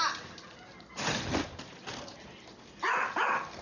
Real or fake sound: real